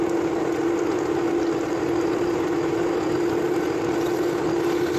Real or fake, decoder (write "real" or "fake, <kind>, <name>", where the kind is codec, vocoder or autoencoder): real